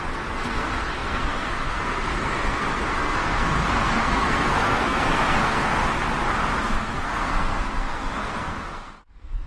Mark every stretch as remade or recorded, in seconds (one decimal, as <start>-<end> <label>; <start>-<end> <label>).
0.0-5.8 remade; 5.8-6.6 recorded; 6.6-9.5 remade